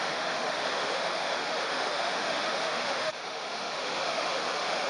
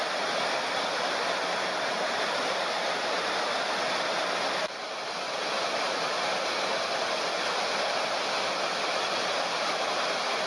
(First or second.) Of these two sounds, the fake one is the first